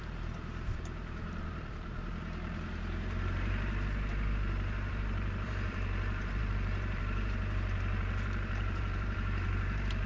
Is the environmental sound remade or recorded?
remade